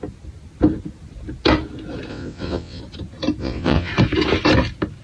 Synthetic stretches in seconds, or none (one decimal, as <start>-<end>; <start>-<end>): 2.1-2.8; 3.4-3.9